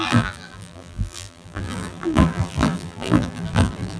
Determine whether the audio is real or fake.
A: fake